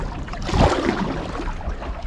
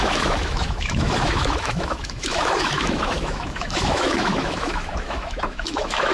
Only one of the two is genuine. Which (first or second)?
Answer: first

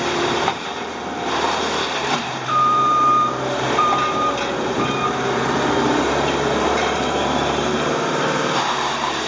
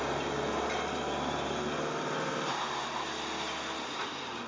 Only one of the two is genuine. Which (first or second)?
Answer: second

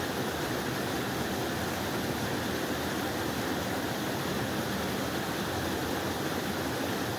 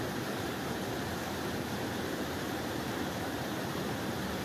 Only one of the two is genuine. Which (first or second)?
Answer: first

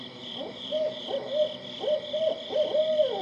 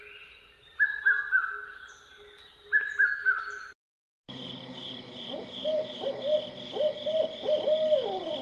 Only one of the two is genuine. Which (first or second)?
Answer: second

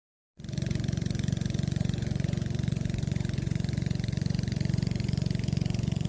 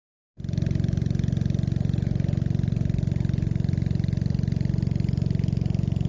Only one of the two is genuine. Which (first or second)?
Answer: second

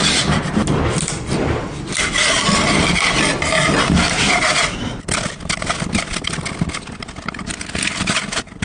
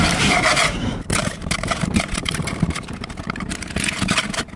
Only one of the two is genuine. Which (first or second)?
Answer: first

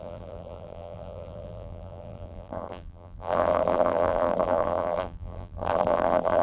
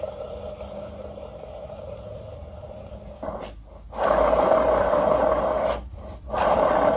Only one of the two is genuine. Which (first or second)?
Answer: second